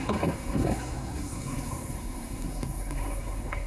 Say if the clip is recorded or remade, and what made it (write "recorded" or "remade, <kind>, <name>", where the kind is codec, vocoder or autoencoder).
remade, codec, SNAC